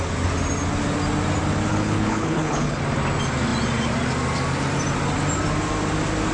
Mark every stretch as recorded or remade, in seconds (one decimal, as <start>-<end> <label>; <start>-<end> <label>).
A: 0.0-1.7 recorded; 1.7-2.8 remade; 2.8-6.3 recorded